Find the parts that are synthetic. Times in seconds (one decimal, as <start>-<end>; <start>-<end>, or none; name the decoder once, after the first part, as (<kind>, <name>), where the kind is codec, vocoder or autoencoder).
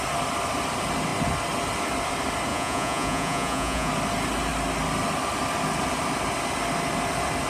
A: 2.5-3.9 (vocoder, Vocos)